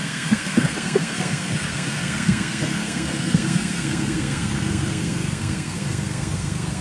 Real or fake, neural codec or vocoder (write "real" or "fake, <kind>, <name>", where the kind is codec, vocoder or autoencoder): fake, codec, SNAC